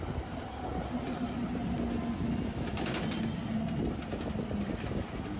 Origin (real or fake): real